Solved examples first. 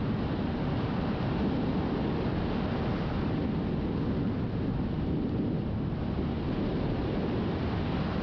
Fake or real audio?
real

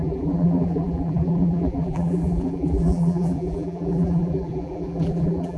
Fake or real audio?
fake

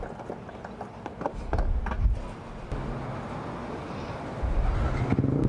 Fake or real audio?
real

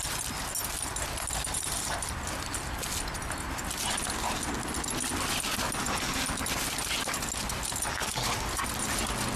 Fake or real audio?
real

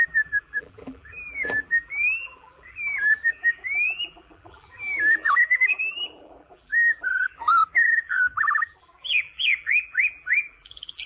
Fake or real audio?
fake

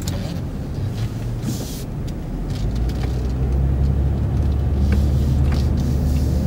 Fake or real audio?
real